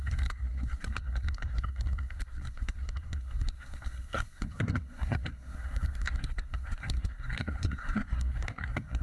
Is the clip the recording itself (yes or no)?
no